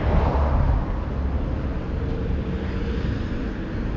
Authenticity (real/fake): real